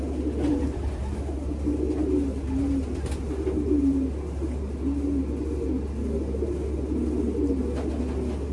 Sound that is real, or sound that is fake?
real